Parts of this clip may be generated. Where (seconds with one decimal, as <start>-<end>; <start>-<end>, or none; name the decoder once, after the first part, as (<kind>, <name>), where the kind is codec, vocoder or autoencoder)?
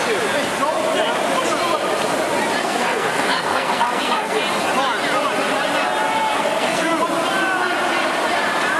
2.6-4.4 (codec, SNAC); 6.3-6.9